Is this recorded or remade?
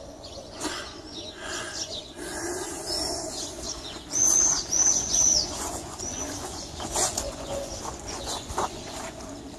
remade